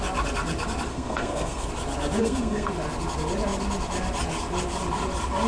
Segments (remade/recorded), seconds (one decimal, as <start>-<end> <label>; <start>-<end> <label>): 0.0-0.9 recorded; 0.9-1.7 remade; 1.7-2.2 recorded; 2.2-2.7 remade; 2.7-5.5 recorded